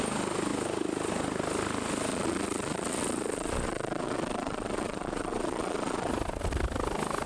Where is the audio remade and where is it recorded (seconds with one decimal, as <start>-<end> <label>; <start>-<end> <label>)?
0.0-2.1 recorded; 2.1-6.1 remade; 6.1-7.3 recorded